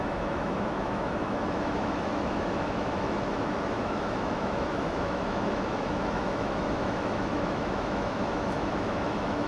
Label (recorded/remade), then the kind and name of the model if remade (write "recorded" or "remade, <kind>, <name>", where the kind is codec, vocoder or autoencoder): remade, autoencoder, DAC-VAE